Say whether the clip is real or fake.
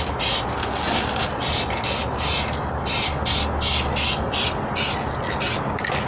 real